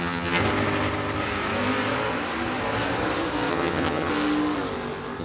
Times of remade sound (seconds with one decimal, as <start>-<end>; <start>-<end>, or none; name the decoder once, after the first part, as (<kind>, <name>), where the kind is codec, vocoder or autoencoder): 0.0-0.4 (vocoder, HiFi-GAN); 3.5-4.1